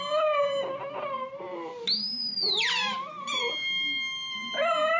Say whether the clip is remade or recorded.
recorded